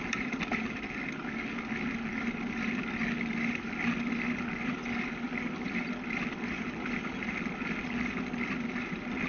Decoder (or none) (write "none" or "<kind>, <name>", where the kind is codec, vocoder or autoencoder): none